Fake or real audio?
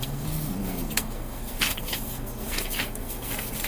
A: fake